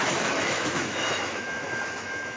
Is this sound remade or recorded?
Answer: remade